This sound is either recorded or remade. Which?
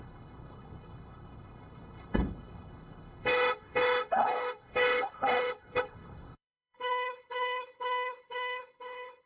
remade